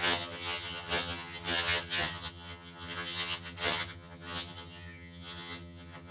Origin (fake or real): fake